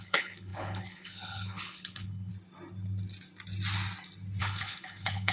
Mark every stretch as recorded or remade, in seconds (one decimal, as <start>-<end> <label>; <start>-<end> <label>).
0.0-2.3 remade; 2.3-4.4 recorded; 4.4-5.3 remade